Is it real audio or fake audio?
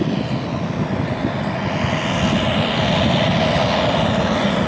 real